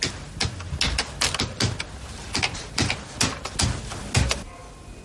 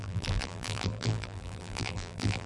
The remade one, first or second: second